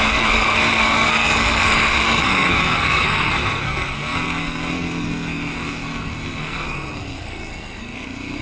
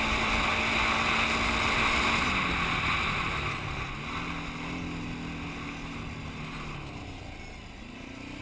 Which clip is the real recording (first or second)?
second